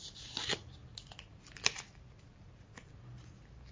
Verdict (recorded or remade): recorded